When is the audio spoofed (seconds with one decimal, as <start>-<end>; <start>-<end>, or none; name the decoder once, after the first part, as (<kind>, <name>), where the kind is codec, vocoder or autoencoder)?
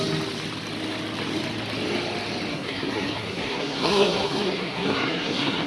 2.5-5.7 (codec, SNAC)